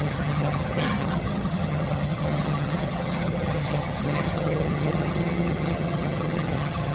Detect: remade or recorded remade